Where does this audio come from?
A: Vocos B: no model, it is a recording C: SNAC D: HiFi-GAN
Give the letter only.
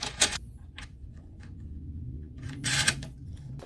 A